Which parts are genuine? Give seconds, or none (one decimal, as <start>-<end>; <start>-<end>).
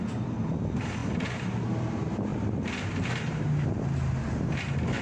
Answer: 0.0-5.0